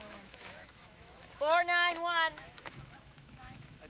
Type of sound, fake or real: fake